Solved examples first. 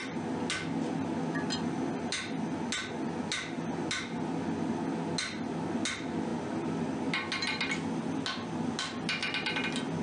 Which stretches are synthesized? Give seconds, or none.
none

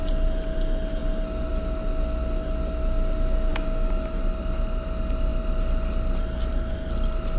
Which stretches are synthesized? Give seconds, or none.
3.5-4.2

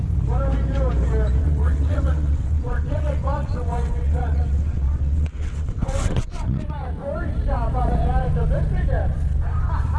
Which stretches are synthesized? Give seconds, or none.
1.4-6.6

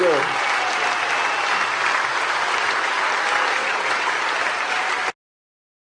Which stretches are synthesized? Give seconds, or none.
3.6-4.1

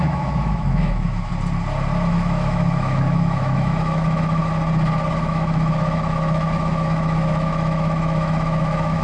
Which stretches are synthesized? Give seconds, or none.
0.0-1.3; 2.1-4.4; 5.2-9.0

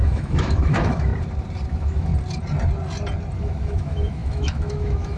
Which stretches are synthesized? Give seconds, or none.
0.0-1.1; 1.7-2.1; 3.4-5.2

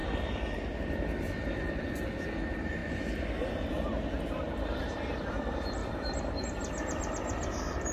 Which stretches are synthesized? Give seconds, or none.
2.4-2.8; 3.5-3.9; 4.5-5.8; 6.4-7.9

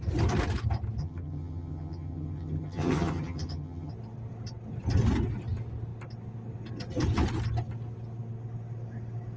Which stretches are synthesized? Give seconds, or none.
1.0-3.9